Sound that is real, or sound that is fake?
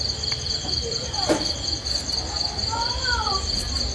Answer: real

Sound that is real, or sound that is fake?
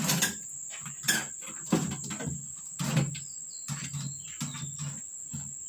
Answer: real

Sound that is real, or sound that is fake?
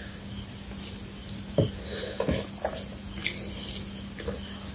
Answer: real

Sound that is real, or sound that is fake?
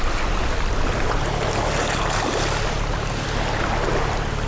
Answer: real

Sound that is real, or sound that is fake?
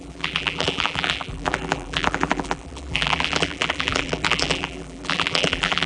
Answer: fake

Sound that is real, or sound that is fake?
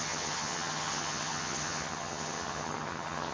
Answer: fake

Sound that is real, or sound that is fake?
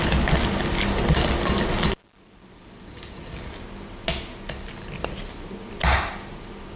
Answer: real